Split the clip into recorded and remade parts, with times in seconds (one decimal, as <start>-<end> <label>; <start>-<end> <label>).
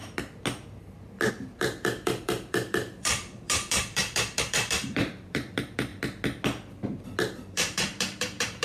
0.0-1.3 recorded; 1.3-5.9 remade; 5.9-7.4 recorded; 7.4-8.6 remade